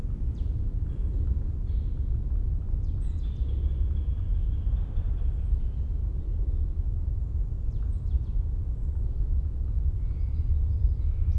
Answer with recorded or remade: recorded